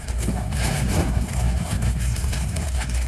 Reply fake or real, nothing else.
fake